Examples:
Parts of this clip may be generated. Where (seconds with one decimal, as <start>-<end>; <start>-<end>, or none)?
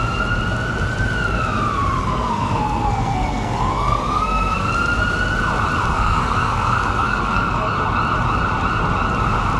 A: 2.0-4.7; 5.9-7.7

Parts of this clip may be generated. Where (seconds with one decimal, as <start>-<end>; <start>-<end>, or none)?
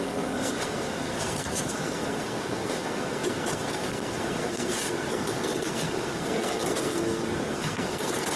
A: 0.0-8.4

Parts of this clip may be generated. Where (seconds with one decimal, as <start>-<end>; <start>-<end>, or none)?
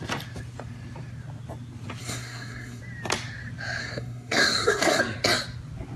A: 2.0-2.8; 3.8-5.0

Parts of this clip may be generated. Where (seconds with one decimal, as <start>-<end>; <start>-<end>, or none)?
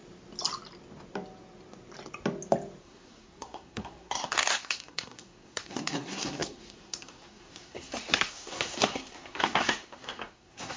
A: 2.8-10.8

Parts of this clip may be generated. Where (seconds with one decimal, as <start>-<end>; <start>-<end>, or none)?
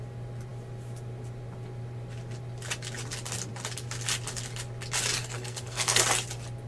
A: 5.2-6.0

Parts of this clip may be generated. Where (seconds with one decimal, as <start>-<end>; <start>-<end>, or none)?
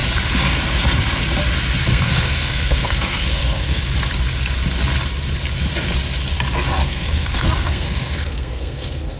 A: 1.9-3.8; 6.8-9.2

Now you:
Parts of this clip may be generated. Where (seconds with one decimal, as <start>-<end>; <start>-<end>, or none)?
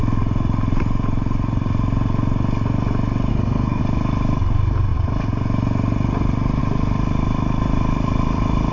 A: 3.3-3.8